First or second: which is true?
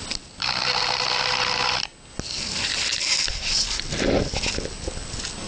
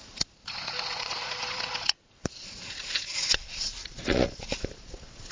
first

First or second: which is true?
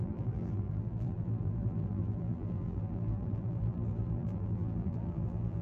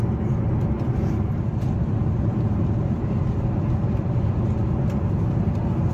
second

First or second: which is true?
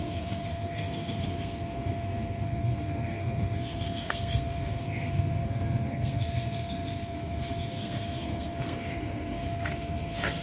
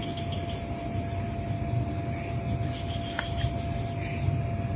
second